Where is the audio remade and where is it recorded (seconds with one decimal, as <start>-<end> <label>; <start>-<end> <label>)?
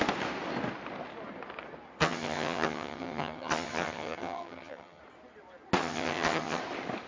0.0-2.0 recorded; 2.0-5.0 remade; 5.0-5.8 recorded; 5.8-6.6 remade; 6.6-7.1 recorded